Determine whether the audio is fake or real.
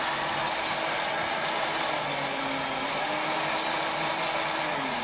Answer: real